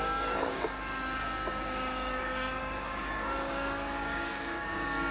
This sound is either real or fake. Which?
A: fake